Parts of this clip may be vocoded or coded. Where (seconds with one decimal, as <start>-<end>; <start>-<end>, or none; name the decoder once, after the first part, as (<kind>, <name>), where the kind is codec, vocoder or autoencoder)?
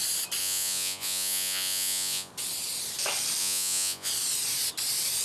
0.4-2.3 (vocoder, Vocos); 3.4-4.1